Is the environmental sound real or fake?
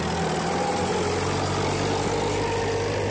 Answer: real